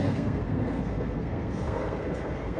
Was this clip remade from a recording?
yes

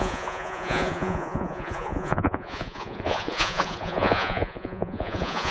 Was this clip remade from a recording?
yes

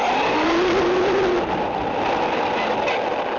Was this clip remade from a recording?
no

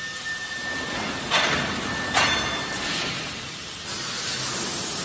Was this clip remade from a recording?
no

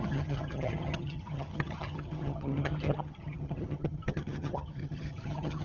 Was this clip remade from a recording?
yes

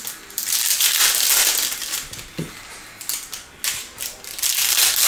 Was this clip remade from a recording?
no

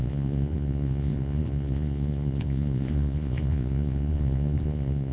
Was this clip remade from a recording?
yes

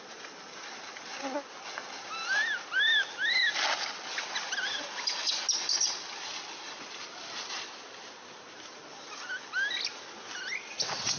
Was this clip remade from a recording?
no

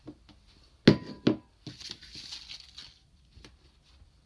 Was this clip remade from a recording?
no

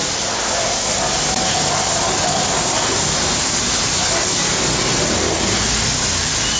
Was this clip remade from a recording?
no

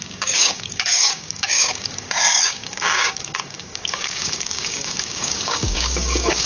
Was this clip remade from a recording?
yes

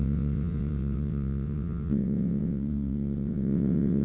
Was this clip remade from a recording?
yes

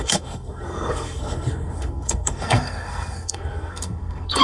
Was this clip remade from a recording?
yes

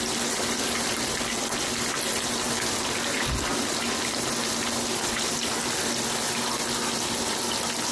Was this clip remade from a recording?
no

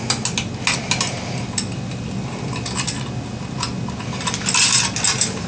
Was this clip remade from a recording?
no